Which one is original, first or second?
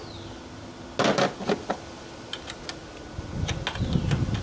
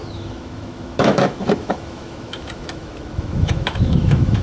first